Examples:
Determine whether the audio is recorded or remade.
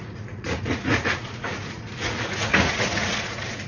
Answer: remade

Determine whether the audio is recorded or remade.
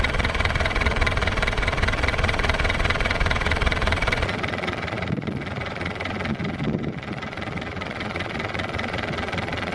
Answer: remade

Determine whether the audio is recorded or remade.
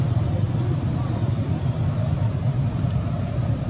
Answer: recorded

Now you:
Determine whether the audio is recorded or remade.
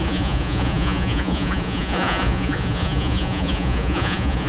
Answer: remade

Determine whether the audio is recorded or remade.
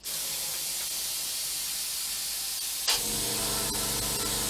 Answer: recorded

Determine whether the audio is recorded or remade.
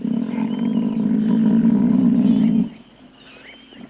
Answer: recorded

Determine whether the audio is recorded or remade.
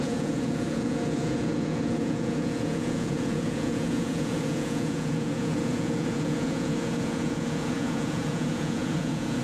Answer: remade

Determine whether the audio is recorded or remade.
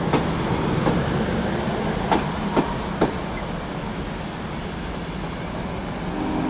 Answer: recorded